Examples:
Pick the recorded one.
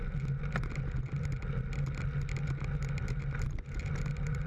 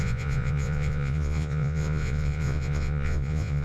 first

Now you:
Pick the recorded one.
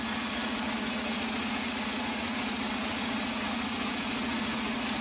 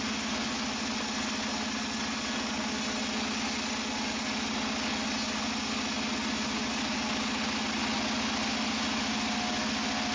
second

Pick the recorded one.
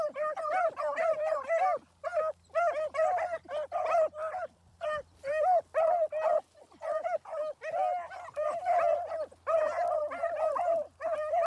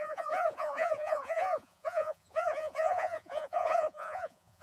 first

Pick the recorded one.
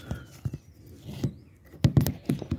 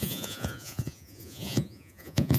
first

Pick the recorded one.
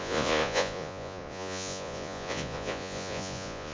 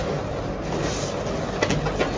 second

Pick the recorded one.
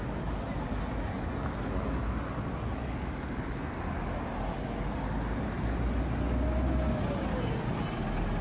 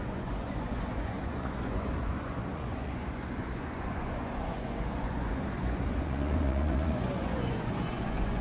first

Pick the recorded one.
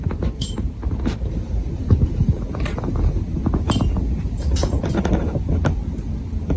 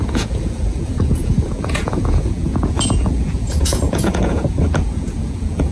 first